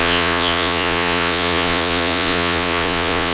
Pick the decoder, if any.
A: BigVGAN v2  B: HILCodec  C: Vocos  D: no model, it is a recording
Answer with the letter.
C